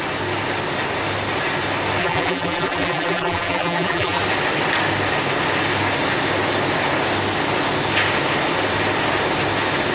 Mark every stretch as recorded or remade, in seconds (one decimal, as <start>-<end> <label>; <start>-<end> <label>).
0.0-2.0 recorded; 2.0-4.2 remade; 4.2-9.9 recorded